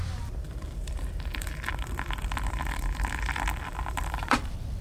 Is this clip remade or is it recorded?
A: remade